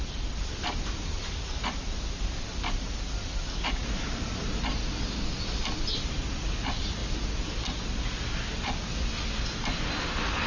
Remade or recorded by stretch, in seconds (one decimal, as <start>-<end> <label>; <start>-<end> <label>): 0.0-10.5 recorded